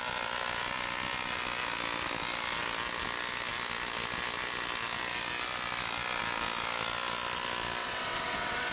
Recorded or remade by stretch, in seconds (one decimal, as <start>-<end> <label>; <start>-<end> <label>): 0.0-7.8 recorded; 7.8-8.7 remade